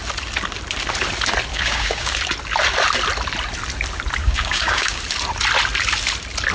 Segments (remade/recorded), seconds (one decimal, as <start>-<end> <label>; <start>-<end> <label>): 0.0-1.5 recorded; 1.5-2.1 remade; 2.1-4.2 recorded; 4.2-5.0 remade; 5.0-6.5 recorded